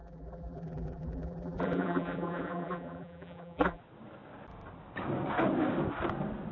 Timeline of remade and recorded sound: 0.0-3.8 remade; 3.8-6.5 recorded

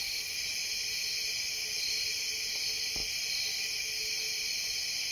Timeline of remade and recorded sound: 0.0-5.1 recorded

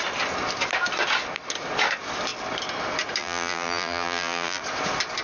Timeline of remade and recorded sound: 0.0-3.2 recorded; 3.2-4.6 remade; 4.6-5.2 recorded